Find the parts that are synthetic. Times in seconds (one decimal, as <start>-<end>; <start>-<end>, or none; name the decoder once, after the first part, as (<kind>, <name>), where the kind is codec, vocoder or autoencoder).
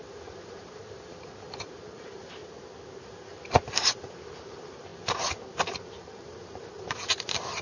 0.0-2.4 (vocoder, BigVGAN v2); 3.0-4.9; 5.9-7.6